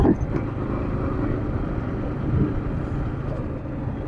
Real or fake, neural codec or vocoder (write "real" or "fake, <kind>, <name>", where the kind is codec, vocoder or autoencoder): real